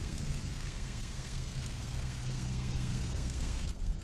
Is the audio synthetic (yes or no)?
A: yes